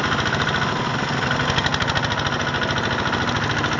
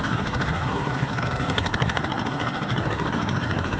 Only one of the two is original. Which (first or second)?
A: first